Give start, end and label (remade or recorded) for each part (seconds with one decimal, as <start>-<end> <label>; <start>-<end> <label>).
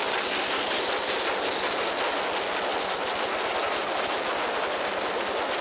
0.0-5.6 recorded